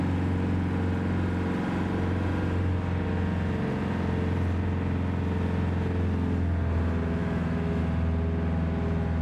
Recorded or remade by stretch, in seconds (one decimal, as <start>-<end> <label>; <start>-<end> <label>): 0.0-7.2 recorded; 7.2-7.8 remade; 7.8-9.2 recorded